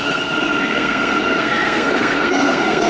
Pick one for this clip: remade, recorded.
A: remade